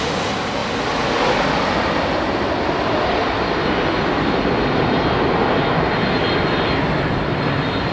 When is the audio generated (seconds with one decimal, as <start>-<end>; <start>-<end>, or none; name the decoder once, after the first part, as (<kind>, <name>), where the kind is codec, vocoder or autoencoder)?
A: none